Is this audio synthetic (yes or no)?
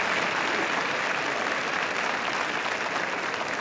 no